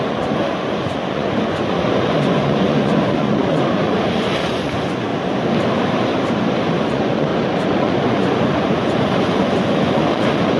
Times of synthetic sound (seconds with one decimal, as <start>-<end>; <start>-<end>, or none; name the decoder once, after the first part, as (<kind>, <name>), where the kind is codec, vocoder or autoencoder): 0.0-5.1 (vocoder, Vocos); 6.8-7.3; 7.8-10.6